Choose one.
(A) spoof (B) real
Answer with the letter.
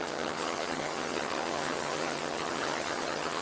A